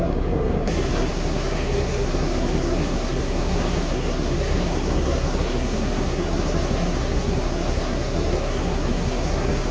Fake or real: fake